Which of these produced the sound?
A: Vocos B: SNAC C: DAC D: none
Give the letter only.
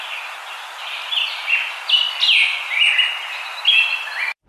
D